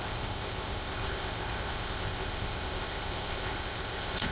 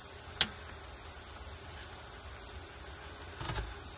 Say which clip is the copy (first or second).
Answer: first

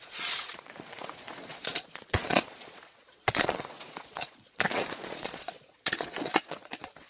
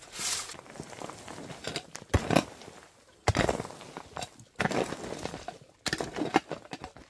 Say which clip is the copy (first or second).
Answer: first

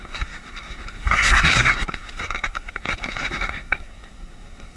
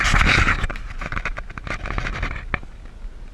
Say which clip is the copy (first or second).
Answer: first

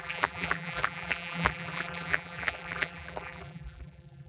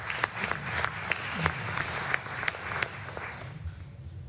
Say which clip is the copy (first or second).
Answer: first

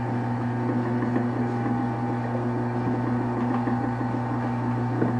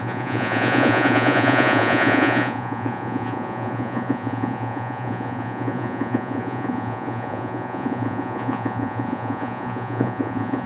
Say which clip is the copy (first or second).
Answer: second